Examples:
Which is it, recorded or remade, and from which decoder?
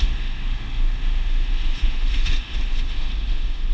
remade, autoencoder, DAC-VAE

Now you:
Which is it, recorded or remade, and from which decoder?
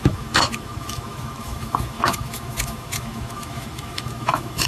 remade, autoencoder, DAC-VAE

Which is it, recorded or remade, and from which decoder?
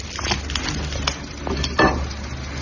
recorded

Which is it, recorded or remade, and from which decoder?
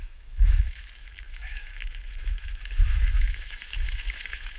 remade, autoencoder, DAC-VAE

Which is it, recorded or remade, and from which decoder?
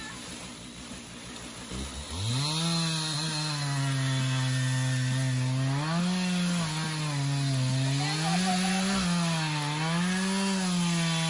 recorded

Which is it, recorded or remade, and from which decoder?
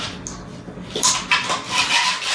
recorded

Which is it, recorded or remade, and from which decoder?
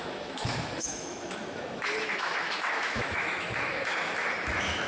remade, autoencoder, DAC-VAE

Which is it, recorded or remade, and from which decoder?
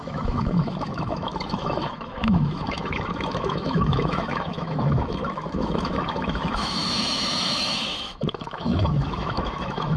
remade, autoencoder, DAC-VAE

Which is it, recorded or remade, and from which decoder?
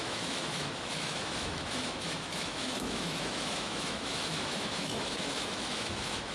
remade, autoencoder, DAC-VAE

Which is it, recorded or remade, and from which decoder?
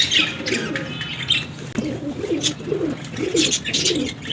recorded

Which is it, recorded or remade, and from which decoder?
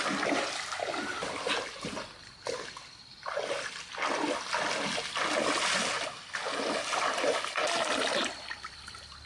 recorded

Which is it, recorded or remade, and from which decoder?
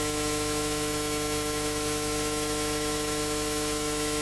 remade, autoencoder, DAC-VAE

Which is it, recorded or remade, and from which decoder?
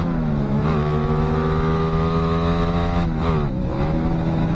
remade, autoencoder, DAC-VAE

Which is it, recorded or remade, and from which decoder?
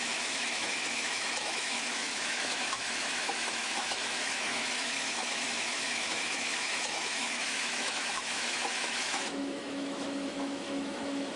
remade, autoencoder, DAC-VAE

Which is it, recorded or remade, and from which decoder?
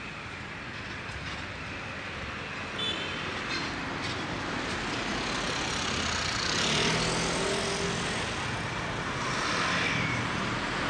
recorded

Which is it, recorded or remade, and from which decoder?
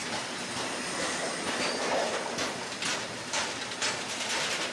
recorded